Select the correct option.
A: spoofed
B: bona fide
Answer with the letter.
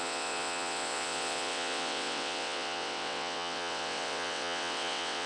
A